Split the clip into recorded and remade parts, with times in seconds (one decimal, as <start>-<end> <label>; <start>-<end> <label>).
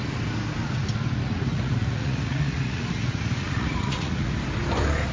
0.0-1.2 recorded; 1.2-4.3 remade; 4.3-5.1 recorded